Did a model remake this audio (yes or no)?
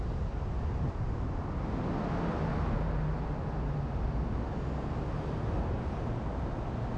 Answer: no